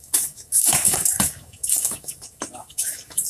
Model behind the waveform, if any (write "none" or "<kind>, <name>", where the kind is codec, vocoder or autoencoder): codec, DAC